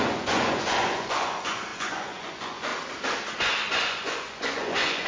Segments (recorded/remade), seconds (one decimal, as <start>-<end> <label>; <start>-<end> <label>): 0.0-2.7 remade; 2.7-3.7 recorded; 3.7-5.1 remade